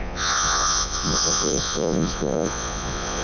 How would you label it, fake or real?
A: fake